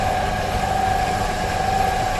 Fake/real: fake